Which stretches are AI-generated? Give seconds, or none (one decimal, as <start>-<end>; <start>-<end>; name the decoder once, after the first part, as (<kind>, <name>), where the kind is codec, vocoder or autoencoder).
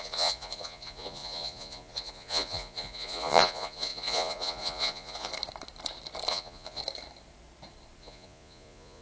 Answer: 0.0-5.3 (vocoder, Vocos); 6.3-6.8; 8.0-9.0